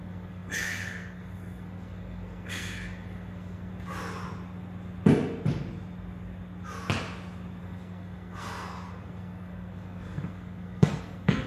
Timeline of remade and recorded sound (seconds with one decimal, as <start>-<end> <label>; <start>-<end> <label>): 0.0-3.7 remade; 3.7-7.6 recorded; 7.6-11.5 remade